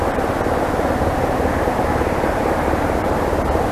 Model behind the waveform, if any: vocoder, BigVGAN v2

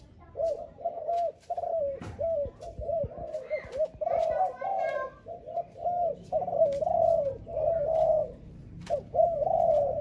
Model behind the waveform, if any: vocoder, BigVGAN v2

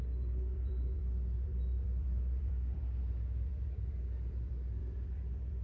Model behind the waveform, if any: vocoder, BigVGAN v2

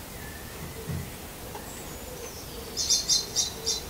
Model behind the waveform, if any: none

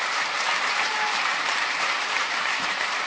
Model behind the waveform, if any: vocoder, BigVGAN v2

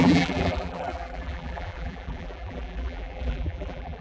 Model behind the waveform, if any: vocoder, BigVGAN v2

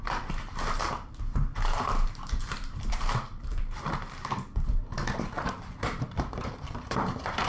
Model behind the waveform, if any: vocoder, BigVGAN v2